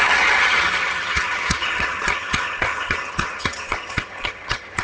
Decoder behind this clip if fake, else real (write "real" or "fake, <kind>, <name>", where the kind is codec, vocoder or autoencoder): fake, vocoder, HiFi-GAN